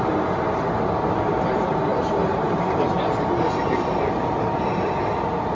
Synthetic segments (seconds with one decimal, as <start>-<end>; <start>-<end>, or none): 1.9-5.1

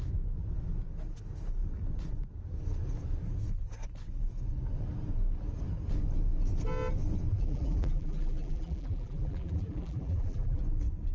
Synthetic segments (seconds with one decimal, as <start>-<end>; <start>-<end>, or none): 7.3-10.6

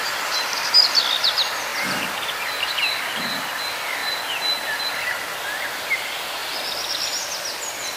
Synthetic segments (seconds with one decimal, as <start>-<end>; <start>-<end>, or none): 0.0-1.7; 2.8-4.0; 4.8-6.4; 6.9-8.0

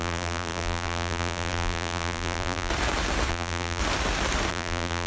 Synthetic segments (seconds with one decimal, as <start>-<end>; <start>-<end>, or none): 0.0-2.7; 3.3-3.8; 4.5-5.1

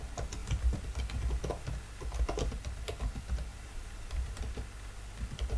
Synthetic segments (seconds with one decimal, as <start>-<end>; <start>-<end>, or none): 3.5-4.4